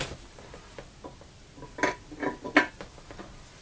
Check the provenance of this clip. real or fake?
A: real